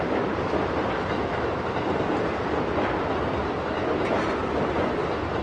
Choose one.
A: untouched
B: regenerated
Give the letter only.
A